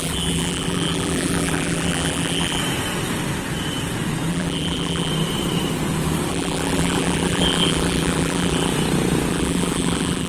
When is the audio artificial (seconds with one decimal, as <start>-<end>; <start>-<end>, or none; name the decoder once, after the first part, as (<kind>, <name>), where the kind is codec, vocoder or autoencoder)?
0.0-2.6 (vocoder, BigVGAN v2); 4.3-5.1; 6.3-8.7; 9.3-10.3